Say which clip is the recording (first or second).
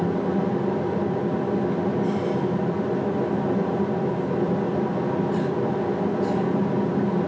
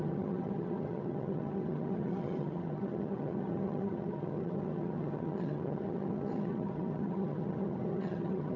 first